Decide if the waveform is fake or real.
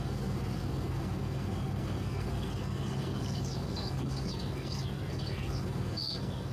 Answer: fake